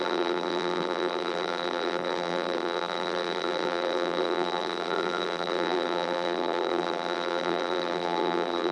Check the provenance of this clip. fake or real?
fake